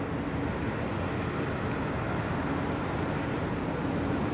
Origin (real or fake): real